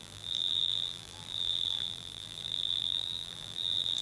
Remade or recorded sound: remade